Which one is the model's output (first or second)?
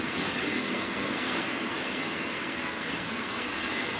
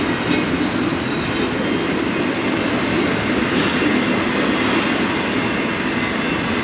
first